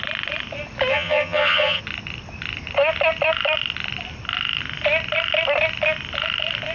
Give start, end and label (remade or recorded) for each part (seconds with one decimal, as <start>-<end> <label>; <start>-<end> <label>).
0.0-0.9 recorded; 0.9-1.8 remade; 1.8-6.7 recorded